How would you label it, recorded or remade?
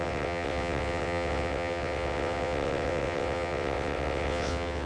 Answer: remade